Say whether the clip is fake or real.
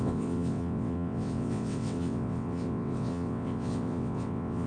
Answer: fake